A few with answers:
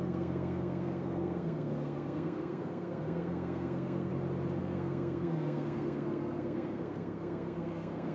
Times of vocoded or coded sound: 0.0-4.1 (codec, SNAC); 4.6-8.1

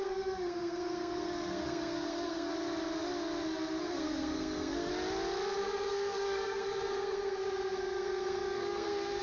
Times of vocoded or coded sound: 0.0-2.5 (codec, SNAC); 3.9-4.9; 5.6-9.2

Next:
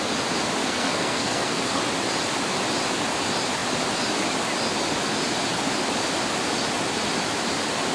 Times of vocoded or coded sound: 0.6-1.8 (codec, SNAC)

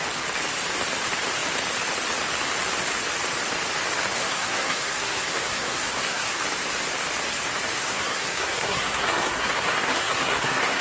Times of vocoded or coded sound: 4.2-6.4 (codec, SNAC); 7.8-10.8

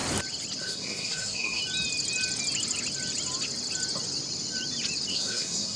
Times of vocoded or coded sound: 0.6-1.6 (codec, SNAC); 5.1-5.8

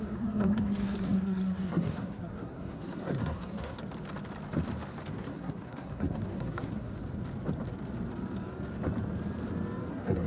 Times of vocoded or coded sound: 0.0-3.8 (codec, SNAC); 5.1-6.9; 9.9-10.3

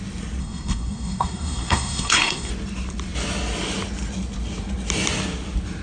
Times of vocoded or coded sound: 0.4-2.5 (codec, SNAC)

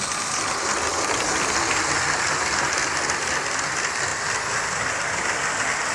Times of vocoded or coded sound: none